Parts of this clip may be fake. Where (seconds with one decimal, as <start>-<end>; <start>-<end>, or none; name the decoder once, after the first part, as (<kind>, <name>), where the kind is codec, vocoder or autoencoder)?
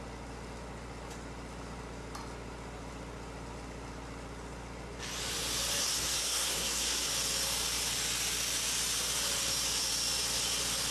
5.8-7.1 (codec, SNAC)